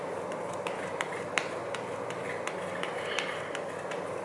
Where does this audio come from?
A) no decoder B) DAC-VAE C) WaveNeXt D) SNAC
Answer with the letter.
A